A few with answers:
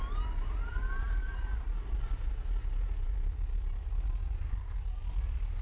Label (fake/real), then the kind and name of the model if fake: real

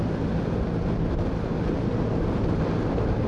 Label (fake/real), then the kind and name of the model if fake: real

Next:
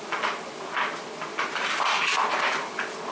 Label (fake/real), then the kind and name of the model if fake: real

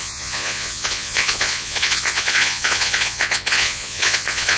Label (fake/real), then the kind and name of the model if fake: fake, vocoder, Vocos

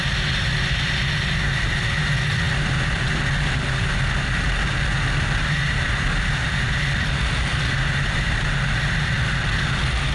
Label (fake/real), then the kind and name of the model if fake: real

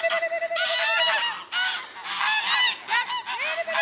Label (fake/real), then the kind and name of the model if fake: real